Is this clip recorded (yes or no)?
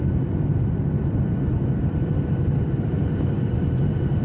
yes